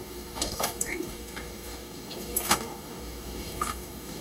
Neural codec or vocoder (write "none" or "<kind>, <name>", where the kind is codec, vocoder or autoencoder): codec, DAC